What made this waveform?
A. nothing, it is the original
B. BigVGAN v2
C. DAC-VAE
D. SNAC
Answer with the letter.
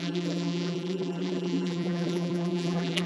B